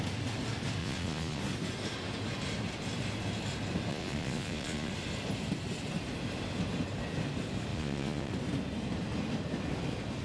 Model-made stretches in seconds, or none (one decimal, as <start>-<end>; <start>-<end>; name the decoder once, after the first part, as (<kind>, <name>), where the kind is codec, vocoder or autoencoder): 0.8-1.4 (vocoder, Vocos); 3.9-4.9; 7.7-8.3